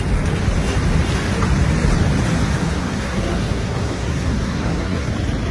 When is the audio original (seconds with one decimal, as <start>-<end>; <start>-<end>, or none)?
0.0-2.6; 5.1-5.5